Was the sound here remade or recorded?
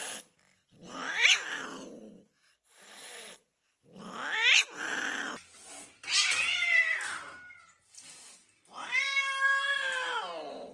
recorded